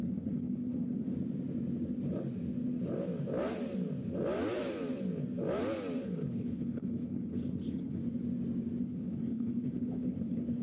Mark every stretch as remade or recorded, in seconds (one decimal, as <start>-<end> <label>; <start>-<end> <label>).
0.0-1.1 remade; 1.1-6.0 recorded; 6.0-8.0 remade; 8.0-8.8 recorded; 8.8-10.6 remade